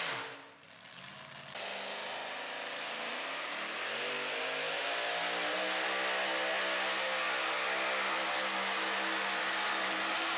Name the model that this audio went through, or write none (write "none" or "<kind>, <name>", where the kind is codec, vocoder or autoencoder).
none